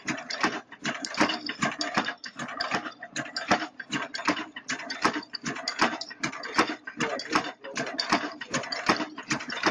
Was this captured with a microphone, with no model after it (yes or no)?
no